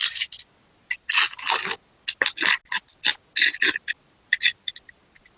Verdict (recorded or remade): recorded